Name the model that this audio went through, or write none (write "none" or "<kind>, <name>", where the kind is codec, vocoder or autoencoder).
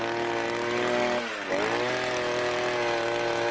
none